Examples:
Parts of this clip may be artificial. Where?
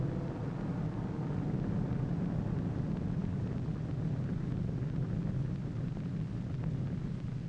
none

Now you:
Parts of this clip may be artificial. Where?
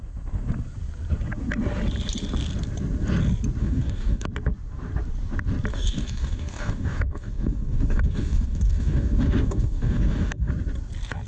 3.6-4.3 (codec, DAC); 5.7-10.5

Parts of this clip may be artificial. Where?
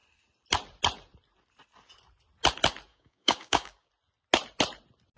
2.9-3.9 (codec, DAC)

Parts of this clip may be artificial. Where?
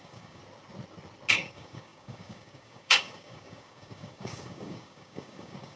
0.0-0.4 (codec, DAC); 1.3-5.8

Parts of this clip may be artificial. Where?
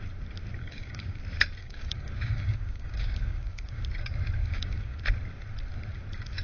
0.6-1.2 (codec, DAC); 1.6-3.8; 4.4-5.0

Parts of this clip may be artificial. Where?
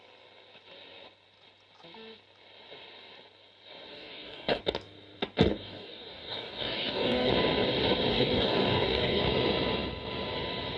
3.9-4.6 (codec, DAC); 5.5-7.3; 8.1-9.2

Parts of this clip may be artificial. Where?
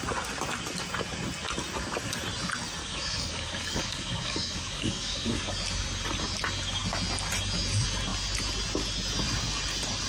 2.8-5.5 (codec, DAC)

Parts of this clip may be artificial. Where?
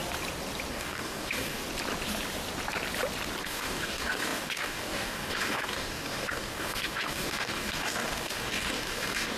0.7-1.6 (codec, DAC); 3.4-9.4